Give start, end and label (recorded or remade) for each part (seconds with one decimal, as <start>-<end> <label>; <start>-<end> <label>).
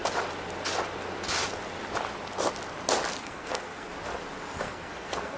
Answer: 0.0-3.2 recorded; 3.2-3.9 remade; 3.9-4.6 recorded; 4.6-5.4 remade